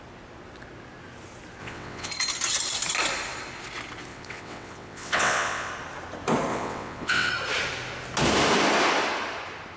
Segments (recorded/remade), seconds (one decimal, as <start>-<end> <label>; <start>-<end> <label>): 0.0-1.6 recorded; 1.6-2.1 remade; 2.1-4.1 recorded; 4.1-5.7 remade; 5.7-6.5 recorded; 6.5-7.3 remade; 7.3-9.8 recorded